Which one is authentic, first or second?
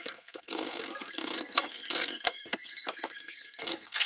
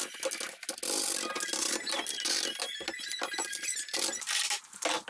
second